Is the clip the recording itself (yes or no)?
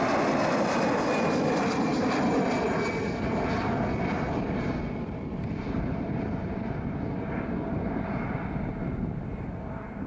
yes